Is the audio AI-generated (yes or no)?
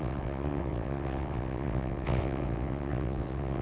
yes